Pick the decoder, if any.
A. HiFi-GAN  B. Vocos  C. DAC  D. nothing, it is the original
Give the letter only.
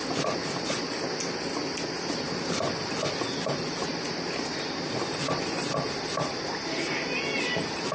D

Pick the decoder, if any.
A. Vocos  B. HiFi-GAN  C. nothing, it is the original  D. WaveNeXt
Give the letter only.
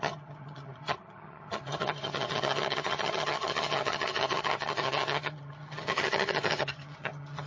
B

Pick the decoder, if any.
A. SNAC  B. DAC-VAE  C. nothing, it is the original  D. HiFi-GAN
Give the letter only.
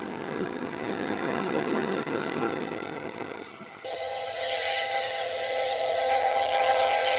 D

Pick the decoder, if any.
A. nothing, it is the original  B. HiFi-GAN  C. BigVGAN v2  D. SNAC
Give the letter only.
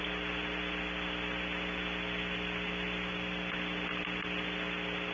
A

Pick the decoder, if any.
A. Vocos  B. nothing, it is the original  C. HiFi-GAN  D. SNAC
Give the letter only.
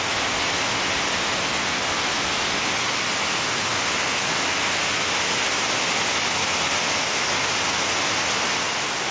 B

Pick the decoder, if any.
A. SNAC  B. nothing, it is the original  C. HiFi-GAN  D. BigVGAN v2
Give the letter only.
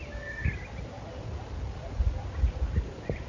B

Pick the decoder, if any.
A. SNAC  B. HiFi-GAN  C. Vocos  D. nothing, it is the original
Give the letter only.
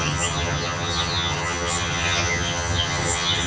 B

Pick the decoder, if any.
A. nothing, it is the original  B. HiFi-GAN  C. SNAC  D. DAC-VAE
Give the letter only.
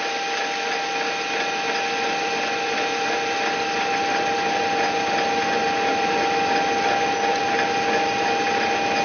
A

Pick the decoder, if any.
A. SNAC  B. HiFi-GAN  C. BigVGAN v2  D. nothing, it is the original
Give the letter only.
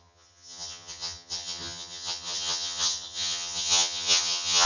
B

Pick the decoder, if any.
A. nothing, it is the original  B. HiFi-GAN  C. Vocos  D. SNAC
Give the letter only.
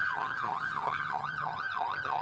B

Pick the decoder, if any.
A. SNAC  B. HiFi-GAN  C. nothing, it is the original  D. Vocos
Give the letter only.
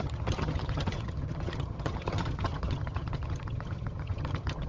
B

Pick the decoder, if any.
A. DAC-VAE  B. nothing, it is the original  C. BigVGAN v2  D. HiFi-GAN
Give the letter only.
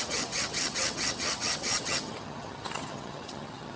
D